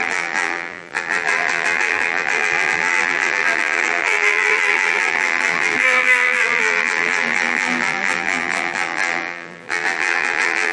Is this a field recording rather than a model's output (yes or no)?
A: no